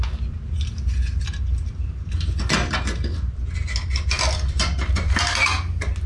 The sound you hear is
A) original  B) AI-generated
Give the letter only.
A